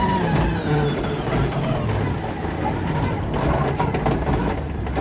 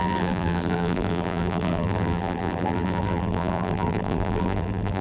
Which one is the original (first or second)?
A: first